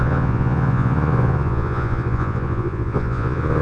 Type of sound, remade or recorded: remade